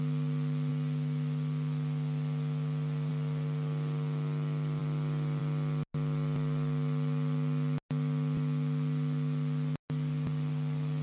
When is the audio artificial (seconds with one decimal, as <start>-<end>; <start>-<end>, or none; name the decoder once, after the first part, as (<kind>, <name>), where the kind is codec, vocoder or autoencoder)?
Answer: none